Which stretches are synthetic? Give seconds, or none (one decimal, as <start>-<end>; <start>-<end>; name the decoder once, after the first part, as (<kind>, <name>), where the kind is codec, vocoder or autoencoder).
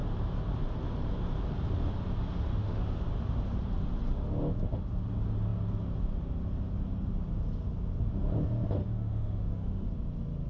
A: 2.5-3.0 (autoencoder, DAC-VAE); 8.8-9.9